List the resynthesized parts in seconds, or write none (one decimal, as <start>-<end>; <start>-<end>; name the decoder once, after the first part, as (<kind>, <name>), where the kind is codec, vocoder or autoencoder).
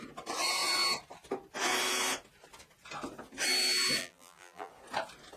4.0-4.7 (vocoder, BigVGAN v2)